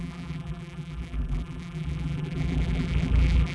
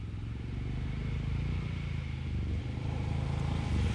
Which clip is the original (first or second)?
second